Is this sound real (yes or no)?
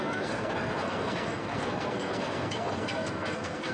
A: no